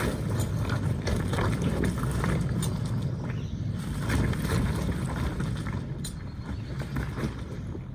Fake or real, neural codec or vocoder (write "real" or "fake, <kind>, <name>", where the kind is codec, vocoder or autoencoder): real